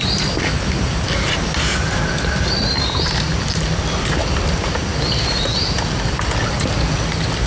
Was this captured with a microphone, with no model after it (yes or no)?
yes